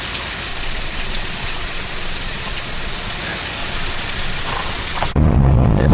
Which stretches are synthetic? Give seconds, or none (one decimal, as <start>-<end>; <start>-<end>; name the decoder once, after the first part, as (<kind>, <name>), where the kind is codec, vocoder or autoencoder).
0.5-3.2 (vocoder, Vocos); 3.6-5.9